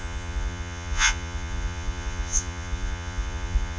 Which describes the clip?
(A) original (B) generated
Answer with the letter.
B